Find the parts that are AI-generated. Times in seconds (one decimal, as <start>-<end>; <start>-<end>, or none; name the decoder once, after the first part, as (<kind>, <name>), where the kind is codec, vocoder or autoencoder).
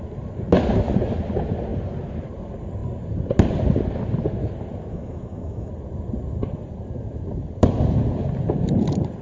4.9-5.7 (autoencoder, DAC-VAE)